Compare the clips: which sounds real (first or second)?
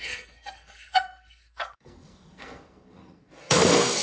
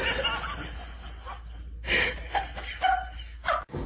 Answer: second